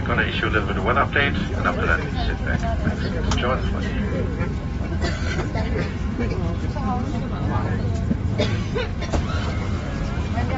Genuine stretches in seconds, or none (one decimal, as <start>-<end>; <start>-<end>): 0.0-4.3; 6.5-8.9; 9.5-10.6